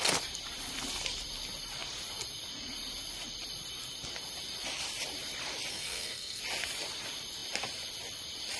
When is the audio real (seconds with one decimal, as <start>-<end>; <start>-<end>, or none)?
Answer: 0.0-5.7; 6.4-8.6